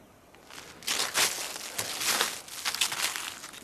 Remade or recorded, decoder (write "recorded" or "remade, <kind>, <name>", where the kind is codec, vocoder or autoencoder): recorded